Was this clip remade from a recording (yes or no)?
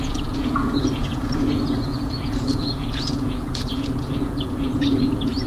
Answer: yes